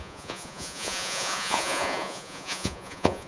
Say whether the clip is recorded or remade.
remade